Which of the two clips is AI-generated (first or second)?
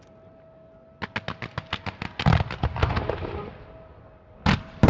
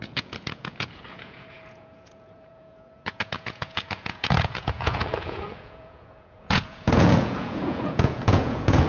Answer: second